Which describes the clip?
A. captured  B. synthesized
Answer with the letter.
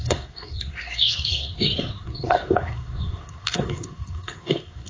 B